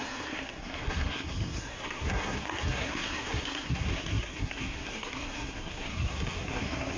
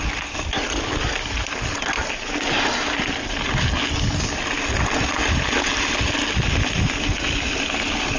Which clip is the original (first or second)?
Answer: second